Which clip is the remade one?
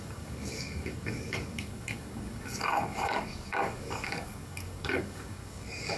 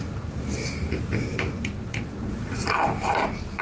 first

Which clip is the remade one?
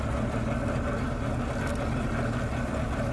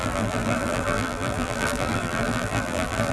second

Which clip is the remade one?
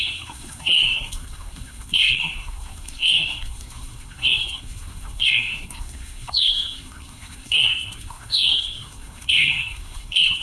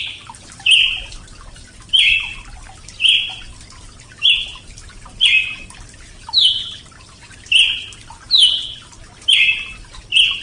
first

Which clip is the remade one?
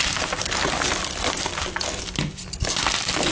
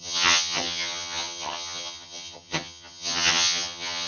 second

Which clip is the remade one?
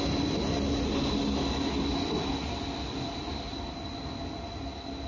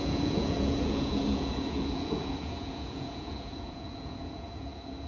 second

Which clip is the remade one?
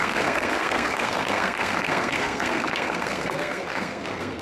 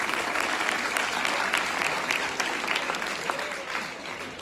first